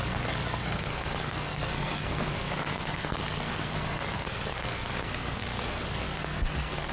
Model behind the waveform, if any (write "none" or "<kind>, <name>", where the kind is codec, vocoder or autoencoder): codec, SNAC